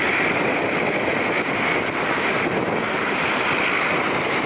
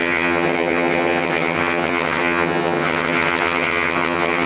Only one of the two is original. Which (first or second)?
first